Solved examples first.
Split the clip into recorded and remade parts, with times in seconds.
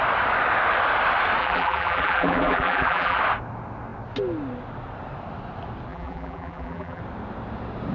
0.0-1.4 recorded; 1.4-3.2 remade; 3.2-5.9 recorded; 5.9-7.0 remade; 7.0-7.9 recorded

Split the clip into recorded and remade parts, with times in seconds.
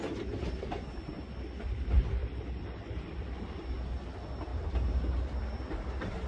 0.0-2.2 recorded; 2.2-3.2 remade; 3.2-4.5 recorded; 4.5-5.4 remade; 5.4-6.3 recorded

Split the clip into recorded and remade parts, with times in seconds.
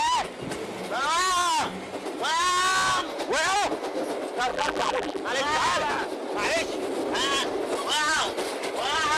0.0-4.5 recorded; 4.5-5.2 remade; 5.2-9.2 recorded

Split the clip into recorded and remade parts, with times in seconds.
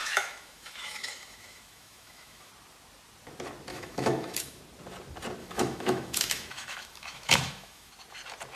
0.0-2.5 remade; 2.5-3.7 recorded; 3.7-4.6 remade; 4.6-5.4 recorded; 5.4-7.9 remade; 7.9-8.6 recorded